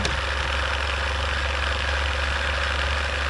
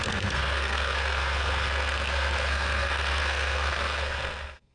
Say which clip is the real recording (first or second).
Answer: first